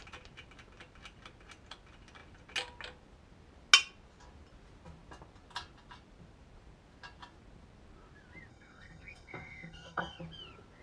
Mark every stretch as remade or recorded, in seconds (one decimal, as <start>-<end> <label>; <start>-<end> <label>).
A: 0.0-8.5 recorded; 8.5-10.2 remade; 10.2-10.8 recorded